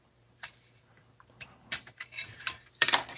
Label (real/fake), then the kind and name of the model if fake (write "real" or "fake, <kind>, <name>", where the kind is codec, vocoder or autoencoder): fake, vocoder, BigVGAN v2